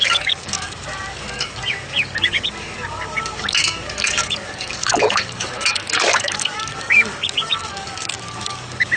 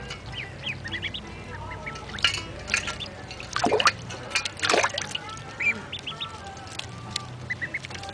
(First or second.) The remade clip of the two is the first